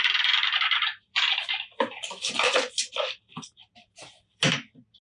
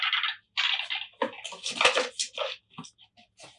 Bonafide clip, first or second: second